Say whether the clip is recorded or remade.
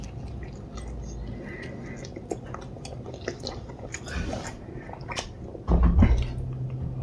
recorded